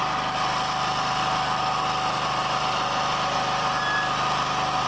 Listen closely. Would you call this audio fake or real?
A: real